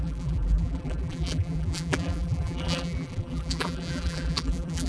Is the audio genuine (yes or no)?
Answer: no